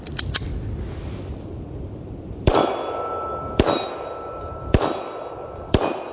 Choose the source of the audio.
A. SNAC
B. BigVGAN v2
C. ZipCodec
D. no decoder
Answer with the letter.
B